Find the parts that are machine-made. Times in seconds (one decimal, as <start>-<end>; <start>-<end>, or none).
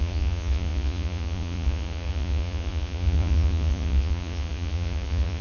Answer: 0.0-5.4